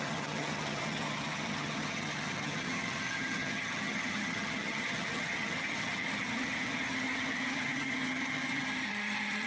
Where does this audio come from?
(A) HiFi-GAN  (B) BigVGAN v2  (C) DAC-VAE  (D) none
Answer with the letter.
A